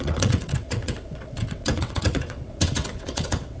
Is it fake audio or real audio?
fake